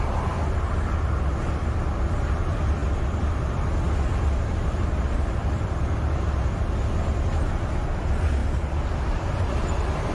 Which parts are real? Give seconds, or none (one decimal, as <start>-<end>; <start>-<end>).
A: 0.0-10.1